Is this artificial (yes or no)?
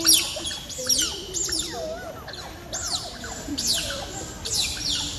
no